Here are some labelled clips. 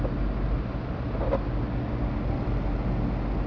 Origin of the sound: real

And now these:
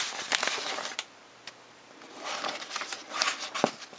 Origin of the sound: real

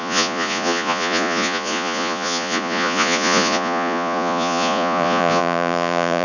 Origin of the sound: fake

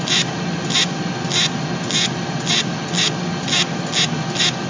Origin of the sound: real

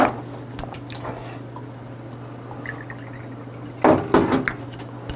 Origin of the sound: real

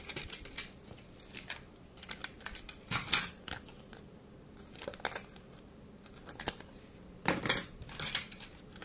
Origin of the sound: real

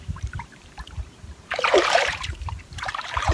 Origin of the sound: fake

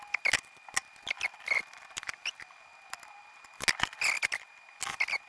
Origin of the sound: real